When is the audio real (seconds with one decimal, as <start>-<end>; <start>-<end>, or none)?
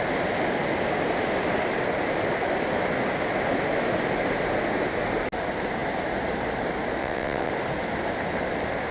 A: 0.0-7.0; 7.5-8.9